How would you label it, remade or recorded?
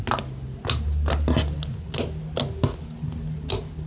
recorded